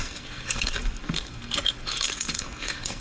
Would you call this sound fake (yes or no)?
yes